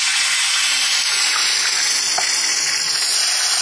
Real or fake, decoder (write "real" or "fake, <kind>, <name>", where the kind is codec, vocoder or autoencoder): real